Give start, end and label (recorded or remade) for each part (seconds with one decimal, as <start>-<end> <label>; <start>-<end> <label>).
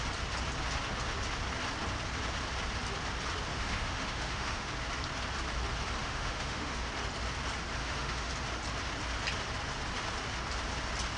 0.0-3.5 recorded; 3.5-4.7 remade; 4.7-6.0 recorded; 6.0-6.9 remade; 6.9-7.8 recorded; 7.8-8.3 remade; 8.3-11.2 recorded